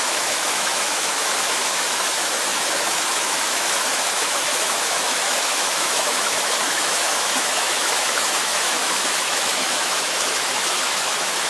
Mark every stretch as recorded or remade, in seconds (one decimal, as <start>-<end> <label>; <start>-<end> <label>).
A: 0.0-11.5 remade